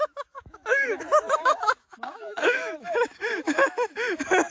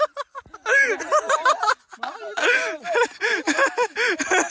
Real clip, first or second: second